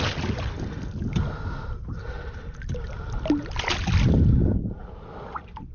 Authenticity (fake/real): real